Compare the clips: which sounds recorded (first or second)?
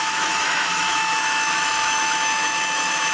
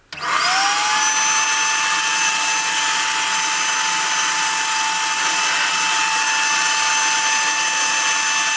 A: second